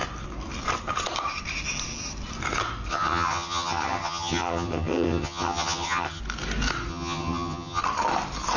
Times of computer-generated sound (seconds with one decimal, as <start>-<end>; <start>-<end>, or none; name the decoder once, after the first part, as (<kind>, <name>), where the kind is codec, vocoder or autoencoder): 2.9-6.2 (vocoder, HiFi-GAN); 6.9-7.8